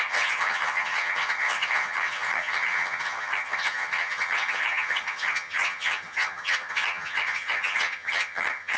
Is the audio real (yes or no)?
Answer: no